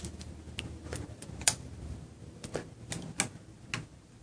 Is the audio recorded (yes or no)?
yes